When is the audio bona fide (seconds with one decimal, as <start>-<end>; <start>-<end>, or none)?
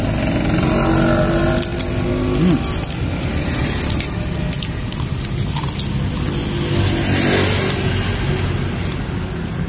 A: 0.0-9.7